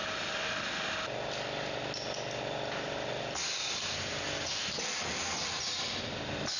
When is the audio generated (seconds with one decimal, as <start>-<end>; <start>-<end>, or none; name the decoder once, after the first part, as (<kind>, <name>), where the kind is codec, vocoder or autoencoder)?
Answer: none